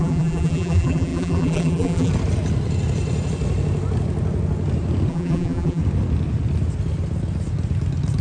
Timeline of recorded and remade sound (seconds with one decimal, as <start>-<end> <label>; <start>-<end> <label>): 0.0-2.1 remade; 2.1-5.1 recorded; 5.1-5.8 remade; 5.8-8.2 recorded